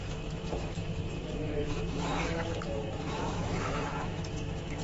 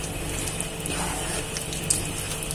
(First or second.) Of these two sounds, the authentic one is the second